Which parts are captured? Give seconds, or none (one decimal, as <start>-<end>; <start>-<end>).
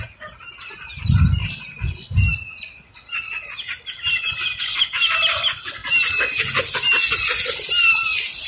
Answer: 0.0-8.5